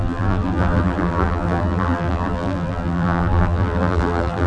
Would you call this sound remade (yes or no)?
yes